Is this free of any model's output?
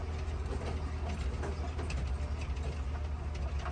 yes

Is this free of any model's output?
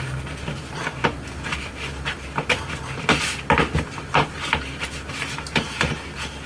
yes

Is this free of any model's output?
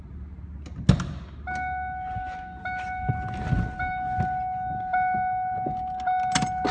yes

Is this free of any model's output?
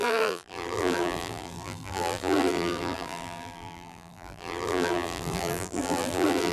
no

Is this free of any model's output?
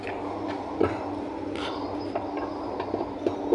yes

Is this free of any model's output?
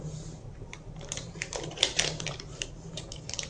no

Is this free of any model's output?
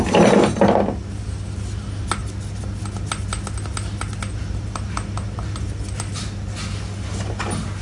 yes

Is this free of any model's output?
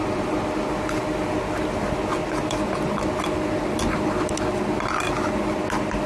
yes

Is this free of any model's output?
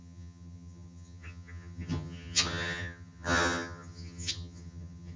no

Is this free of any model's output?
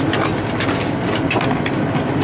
yes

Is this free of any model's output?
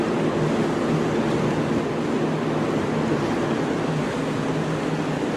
yes